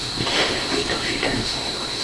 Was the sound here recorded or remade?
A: remade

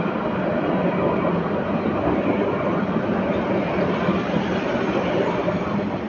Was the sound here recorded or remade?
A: recorded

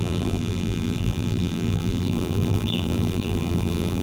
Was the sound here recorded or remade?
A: remade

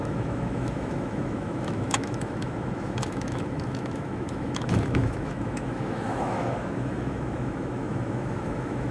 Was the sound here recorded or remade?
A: remade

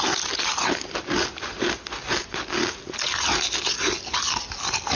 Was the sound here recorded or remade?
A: recorded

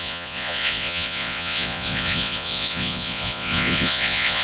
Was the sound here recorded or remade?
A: remade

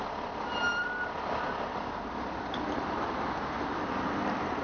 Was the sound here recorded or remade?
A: recorded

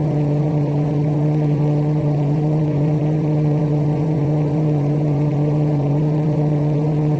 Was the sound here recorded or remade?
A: remade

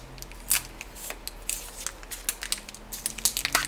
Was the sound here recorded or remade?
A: recorded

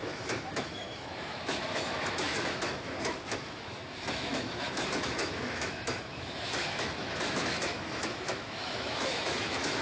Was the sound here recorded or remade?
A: remade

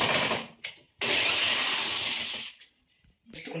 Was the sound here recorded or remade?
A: recorded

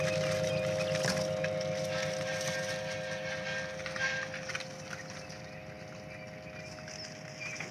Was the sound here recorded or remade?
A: recorded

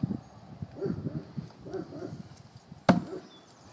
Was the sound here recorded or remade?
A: recorded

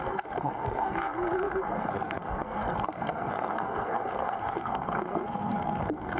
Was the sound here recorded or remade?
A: remade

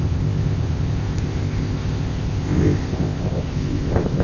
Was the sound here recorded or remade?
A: remade